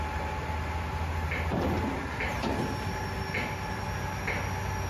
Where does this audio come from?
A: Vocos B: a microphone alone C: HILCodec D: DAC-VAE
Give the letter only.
B